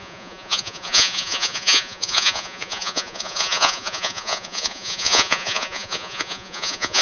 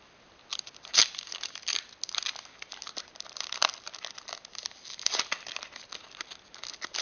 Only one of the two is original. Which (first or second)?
second